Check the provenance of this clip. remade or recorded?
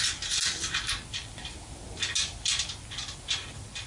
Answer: recorded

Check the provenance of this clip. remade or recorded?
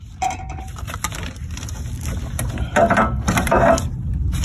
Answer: recorded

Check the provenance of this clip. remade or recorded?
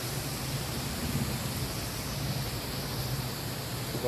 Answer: recorded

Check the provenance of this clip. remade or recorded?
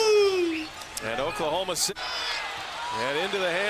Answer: recorded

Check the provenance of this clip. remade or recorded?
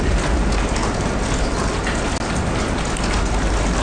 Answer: recorded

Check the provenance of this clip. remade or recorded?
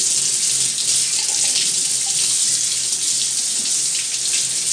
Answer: recorded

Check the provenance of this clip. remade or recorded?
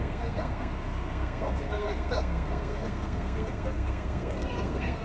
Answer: remade